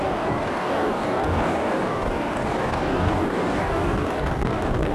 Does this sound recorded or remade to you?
remade